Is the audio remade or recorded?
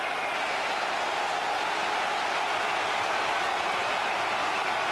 recorded